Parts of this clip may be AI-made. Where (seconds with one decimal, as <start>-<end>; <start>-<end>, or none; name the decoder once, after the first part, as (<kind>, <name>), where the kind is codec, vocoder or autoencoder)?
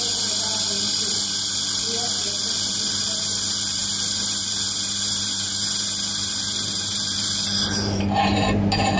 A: 3.8-9.0 (vocoder, BigVGAN v2)